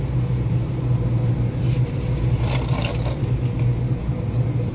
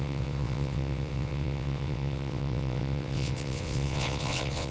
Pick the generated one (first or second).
second